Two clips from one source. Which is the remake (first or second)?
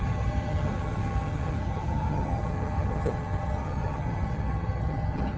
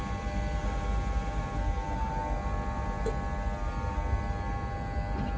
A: first